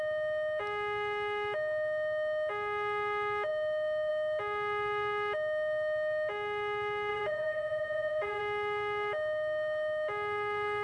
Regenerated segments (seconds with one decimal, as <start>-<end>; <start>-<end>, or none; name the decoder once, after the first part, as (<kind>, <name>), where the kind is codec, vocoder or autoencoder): 7.1-8.4 (vocoder, Vocos)